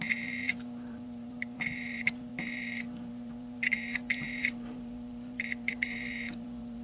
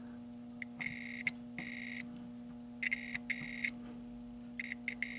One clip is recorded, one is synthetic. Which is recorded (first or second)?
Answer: second